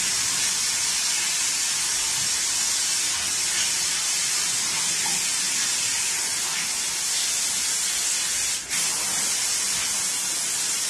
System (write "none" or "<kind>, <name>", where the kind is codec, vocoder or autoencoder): none